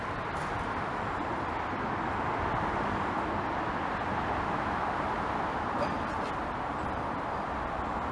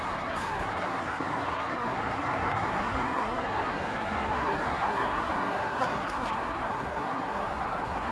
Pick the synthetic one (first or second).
second